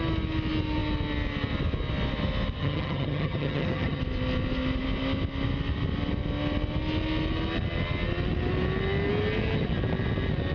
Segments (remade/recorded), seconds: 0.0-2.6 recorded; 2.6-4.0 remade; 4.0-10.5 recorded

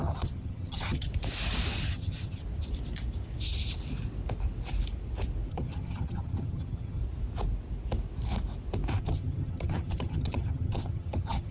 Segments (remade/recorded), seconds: 0.0-1.1 remade; 1.1-1.8 recorded; 1.8-2.4 remade; 2.4-5.5 recorded; 5.5-7.0 remade; 7.0-9.0 recorded; 9.0-11.5 remade